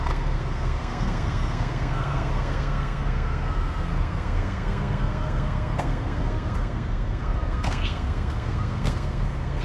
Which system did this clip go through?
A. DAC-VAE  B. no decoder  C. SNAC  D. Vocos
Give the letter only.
C